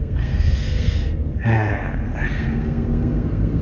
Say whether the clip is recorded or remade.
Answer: remade